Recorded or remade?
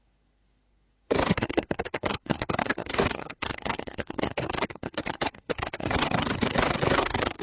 remade